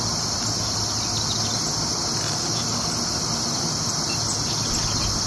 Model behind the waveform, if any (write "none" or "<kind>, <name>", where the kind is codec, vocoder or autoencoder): none